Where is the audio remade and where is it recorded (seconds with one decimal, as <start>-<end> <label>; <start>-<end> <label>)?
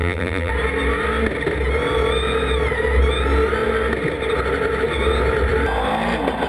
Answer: 0.0-0.5 remade; 0.5-6.5 recorded